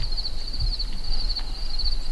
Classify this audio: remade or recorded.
recorded